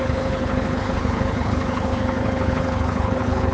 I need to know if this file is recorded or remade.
remade